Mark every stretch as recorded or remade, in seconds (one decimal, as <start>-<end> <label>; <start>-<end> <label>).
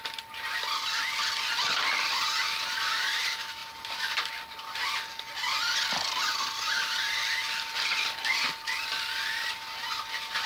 0.0-3.6 recorded; 3.6-4.2 remade; 4.2-10.5 recorded